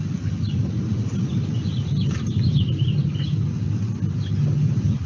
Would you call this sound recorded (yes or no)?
yes